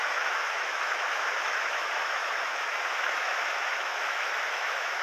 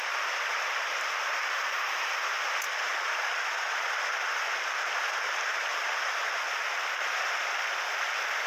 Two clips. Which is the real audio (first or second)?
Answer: second